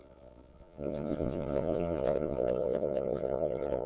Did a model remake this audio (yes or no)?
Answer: yes